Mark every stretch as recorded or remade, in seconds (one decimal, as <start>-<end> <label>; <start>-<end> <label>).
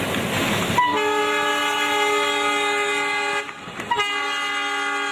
0.0-5.1 recorded